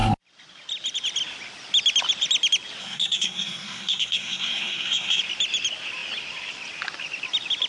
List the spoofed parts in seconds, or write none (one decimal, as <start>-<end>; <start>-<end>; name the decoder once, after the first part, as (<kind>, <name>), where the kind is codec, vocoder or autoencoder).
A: 2.8-5.2 (codec, SNAC)

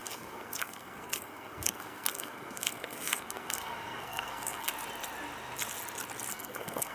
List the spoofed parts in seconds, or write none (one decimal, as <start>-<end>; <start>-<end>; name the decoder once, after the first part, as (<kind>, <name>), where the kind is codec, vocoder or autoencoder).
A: 0.0-4.7 (codec, SNAC); 6.3-6.9